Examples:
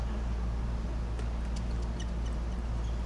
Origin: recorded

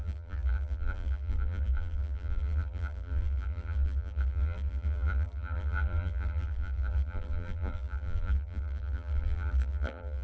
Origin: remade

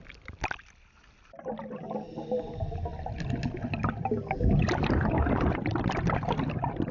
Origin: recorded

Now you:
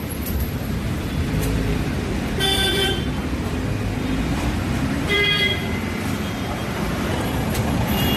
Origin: remade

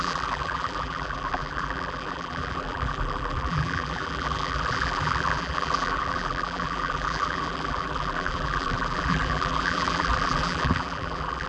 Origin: remade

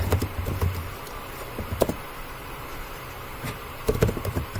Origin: remade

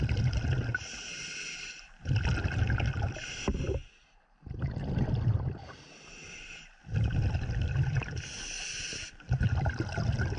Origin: recorded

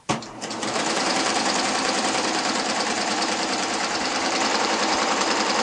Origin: remade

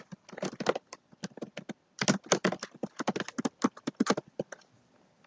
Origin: recorded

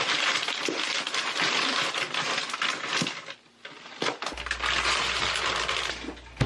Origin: recorded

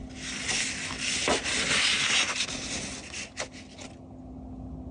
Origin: recorded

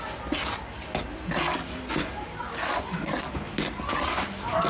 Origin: recorded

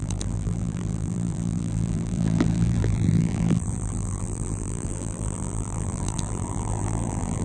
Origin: remade